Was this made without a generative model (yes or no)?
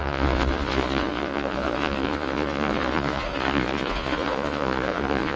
no